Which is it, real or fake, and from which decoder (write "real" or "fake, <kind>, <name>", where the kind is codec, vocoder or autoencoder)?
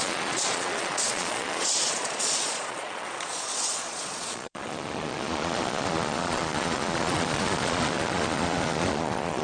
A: fake, vocoder, Vocos